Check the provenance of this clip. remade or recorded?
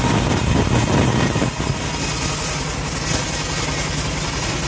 recorded